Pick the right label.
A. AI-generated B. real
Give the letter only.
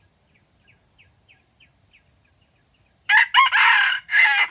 B